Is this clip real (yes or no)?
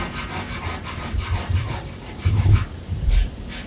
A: no